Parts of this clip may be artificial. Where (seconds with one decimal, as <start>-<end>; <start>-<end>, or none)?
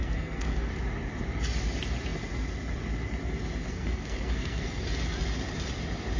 0.0-0.7; 3.6-4.8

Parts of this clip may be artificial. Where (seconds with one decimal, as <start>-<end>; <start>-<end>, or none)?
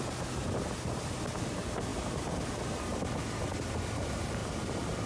none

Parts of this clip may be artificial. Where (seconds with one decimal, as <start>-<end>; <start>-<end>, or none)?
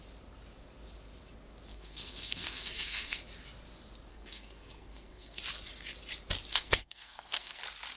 1.7-3.2; 4.1-5.4; 6.5-7.6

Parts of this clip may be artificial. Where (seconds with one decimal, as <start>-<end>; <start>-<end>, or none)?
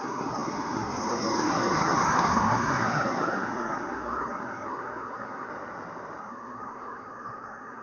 0.0-5.5; 6.2-7.8